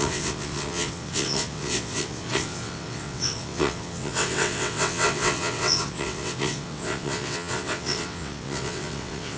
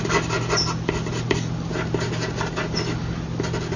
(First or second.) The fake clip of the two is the first